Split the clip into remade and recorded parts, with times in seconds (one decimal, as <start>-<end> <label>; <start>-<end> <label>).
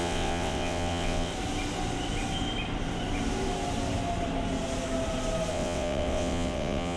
0.0-1.3 remade; 1.3-5.5 recorded; 5.5-7.0 remade